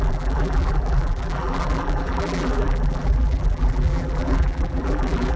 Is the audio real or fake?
fake